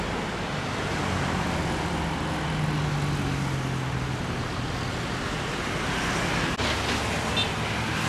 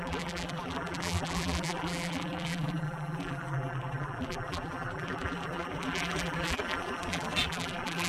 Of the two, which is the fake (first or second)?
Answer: second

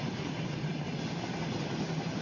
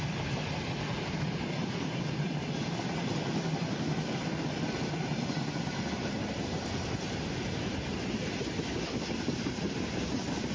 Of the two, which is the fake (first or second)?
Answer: second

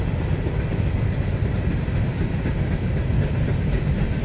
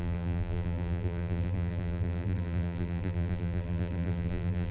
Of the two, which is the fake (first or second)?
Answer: second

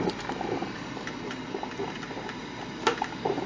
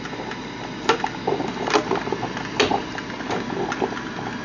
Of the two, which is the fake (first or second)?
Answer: first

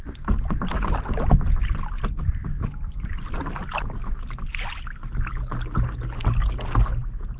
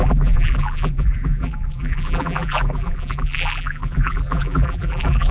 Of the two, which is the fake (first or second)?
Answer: second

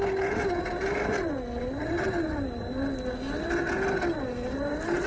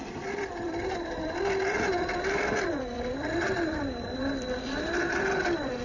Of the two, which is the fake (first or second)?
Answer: second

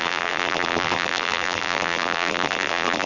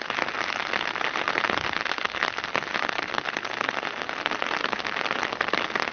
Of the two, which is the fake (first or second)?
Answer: first